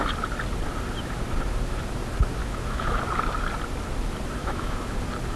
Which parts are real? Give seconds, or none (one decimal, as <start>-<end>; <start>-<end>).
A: 0.0-2.4; 3.0-4.4; 5.0-5.4